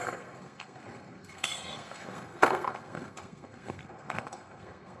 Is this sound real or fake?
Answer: fake